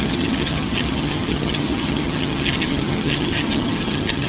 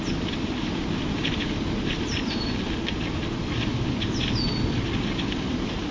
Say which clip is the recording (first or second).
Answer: second